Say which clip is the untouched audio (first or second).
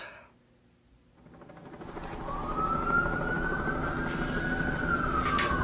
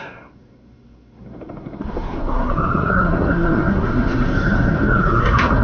first